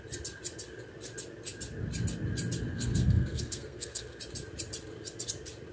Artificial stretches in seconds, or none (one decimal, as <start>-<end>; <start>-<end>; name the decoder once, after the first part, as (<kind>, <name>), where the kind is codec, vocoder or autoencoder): 2.7-4.2 (codec, SNAC)

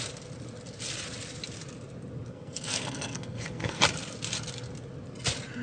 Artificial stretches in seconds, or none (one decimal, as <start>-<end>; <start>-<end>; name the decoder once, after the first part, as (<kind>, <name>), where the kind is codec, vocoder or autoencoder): 2.3-3.8 (codec, SNAC)

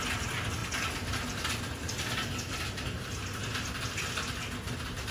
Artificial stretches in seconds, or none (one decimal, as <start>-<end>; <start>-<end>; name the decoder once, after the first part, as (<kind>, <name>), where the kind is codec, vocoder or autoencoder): 3.4-4.2 (vocoder, BigVGAN v2)